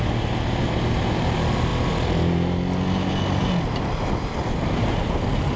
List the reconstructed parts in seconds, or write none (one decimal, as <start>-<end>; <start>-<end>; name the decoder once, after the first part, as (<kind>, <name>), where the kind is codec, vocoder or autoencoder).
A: none